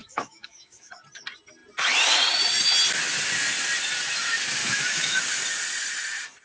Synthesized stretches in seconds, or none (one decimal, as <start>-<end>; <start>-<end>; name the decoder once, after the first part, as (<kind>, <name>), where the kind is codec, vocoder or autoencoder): 0.0-0.9 (autoencoder, DAC-VAE); 4.6-5.2